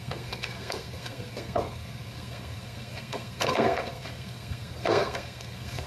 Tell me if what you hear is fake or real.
fake